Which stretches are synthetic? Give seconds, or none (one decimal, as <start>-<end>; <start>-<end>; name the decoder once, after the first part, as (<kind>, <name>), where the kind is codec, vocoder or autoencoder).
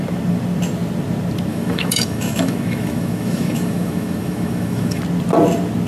1.5-5.0 (autoencoder, DAC-VAE)